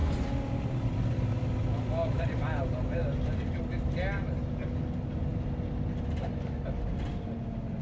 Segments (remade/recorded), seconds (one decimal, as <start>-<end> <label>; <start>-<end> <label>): 0.0-1.3 remade; 1.3-2.1 recorded; 2.1-2.6 remade; 2.6-3.0 recorded; 3.0-3.7 remade; 3.7-7.8 recorded